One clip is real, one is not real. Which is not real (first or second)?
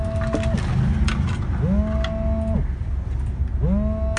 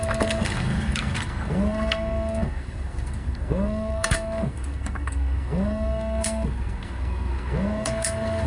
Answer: second